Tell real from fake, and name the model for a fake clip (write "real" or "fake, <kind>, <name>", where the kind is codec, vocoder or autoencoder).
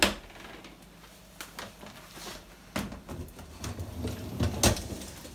real